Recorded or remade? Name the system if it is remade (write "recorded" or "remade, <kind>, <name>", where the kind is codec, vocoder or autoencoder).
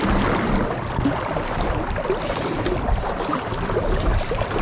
recorded